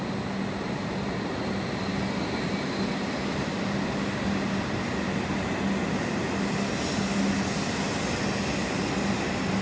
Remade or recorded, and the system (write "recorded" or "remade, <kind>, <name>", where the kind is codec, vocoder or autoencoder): recorded